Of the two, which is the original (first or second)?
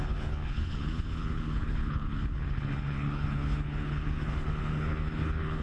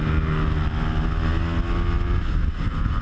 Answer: second